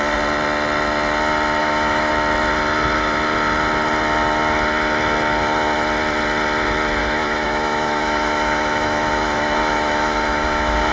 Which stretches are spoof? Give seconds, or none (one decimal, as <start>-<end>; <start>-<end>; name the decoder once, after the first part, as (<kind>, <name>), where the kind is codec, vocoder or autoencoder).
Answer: 1.6-2.1 (autoencoder, DAC-VAE); 7.0-10.9